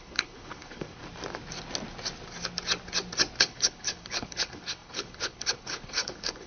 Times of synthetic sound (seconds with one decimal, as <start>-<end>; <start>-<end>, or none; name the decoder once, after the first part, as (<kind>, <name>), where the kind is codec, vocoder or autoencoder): 0.0-1.0 (codec, HILCodec); 3.4-6.5